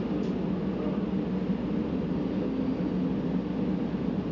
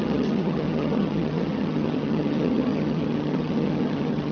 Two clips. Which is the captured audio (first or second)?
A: first